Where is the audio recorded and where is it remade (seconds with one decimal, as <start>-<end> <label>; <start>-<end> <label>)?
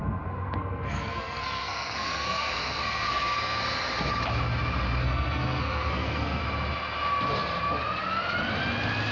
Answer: 0.0-3.6 remade; 3.6-5.0 recorded; 5.0-6.4 remade; 6.4-9.1 recorded